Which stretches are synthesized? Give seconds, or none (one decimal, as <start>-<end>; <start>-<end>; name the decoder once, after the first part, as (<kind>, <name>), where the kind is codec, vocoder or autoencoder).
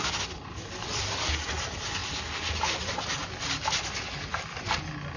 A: none